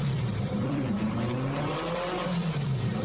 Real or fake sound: fake